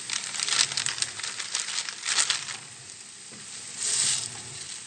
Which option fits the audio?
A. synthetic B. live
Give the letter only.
B